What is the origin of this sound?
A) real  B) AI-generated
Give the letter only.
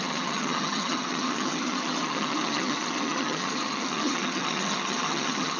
B